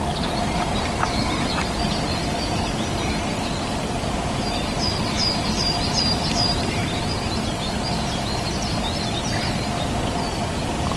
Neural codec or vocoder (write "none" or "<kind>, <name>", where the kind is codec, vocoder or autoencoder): none